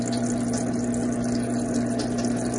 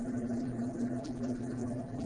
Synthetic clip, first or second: second